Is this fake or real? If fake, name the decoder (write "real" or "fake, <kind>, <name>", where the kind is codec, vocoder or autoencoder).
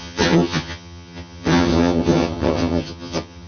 fake, vocoder, HiFi-GAN